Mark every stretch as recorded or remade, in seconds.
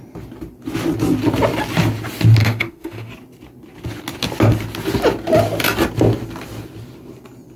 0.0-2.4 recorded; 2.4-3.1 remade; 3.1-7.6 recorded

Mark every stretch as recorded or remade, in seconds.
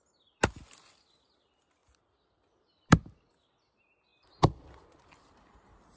0.0-6.0 recorded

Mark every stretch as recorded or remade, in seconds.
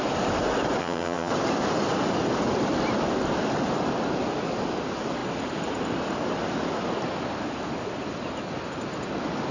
0.0-0.8 recorded; 0.8-1.3 remade; 1.3-9.5 recorded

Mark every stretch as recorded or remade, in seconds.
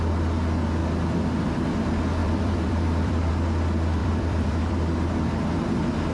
0.0-2.2 recorded; 2.2-3.3 remade; 3.3-4.0 recorded; 4.0-4.7 remade; 4.7-6.1 recorded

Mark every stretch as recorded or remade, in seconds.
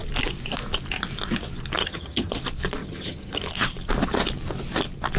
0.0-1.8 recorded; 1.8-2.3 remade; 2.3-2.8 recorded; 2.8-3.4 remade; 3.4-5.2 recorded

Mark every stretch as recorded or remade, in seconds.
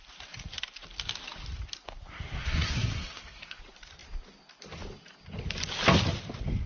0.0-2.4 recorded; 2.4-3.6 remade; 3.6-6.7 recorded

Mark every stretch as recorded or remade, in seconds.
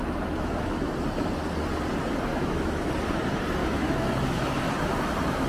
0.0-0.9 remade; 0.9-2.3 recorded; 2.3-2.9 remade; 2.9-3.6 recorded; 3.6-4.6 remade; 4.6-5.5 recorded